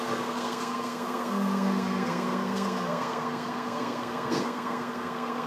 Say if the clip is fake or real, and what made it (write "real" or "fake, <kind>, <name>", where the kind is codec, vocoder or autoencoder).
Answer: fake, codec, SNAC